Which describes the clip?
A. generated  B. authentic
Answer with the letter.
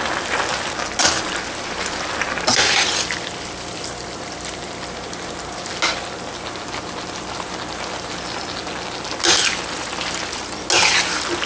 B